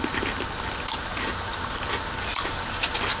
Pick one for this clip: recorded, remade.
recorded